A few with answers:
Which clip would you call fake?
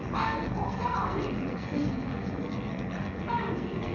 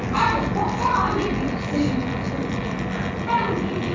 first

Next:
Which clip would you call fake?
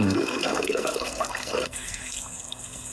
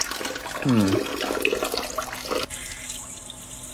first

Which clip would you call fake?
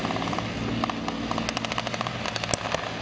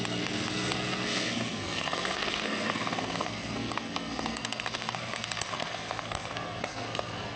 second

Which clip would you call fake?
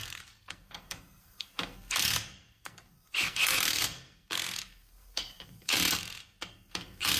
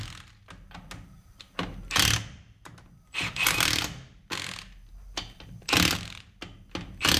first